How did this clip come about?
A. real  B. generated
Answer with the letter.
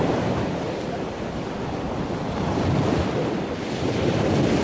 A